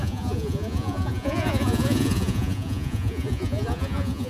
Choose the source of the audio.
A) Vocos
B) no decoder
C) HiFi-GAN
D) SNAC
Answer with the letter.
A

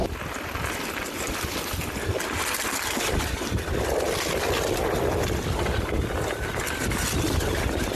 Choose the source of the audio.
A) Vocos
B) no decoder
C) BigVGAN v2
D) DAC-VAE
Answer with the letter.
B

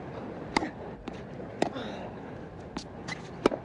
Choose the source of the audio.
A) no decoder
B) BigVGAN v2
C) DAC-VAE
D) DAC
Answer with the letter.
B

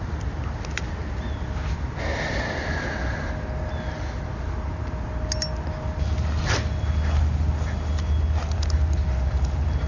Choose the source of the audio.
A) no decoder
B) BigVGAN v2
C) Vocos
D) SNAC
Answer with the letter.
A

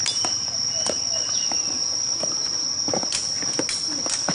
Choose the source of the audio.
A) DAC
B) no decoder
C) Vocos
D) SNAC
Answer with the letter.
B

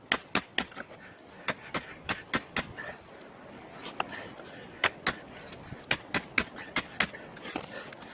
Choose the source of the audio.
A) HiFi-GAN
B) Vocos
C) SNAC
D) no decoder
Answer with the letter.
D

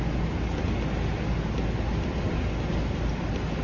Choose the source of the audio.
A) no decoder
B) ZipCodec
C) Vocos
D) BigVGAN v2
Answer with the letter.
A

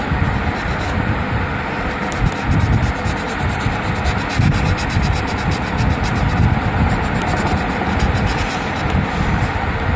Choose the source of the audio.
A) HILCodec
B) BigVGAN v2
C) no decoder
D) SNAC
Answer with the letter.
C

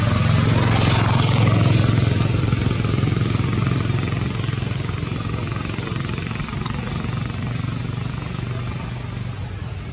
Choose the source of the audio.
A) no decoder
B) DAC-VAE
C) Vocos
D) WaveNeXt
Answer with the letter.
A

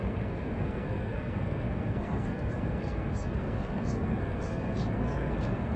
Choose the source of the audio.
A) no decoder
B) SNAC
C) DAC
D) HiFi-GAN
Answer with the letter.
B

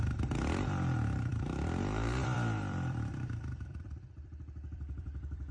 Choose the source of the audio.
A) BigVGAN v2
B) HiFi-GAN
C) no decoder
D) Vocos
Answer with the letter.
A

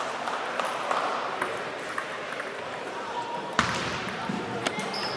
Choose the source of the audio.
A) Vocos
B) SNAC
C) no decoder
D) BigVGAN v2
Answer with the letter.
D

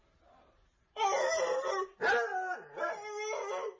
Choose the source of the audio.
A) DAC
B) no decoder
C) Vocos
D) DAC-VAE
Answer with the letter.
B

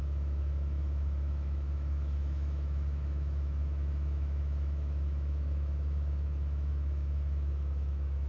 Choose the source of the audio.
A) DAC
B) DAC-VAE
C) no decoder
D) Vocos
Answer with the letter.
B